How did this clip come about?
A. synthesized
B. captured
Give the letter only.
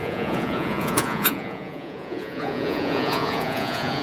A